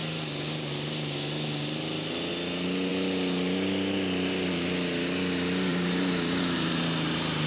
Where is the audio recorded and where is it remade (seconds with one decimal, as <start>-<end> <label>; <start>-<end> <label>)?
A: 0.0-5.7 recorded; 5.7-6.8 remade; 6.8-7.5 recorded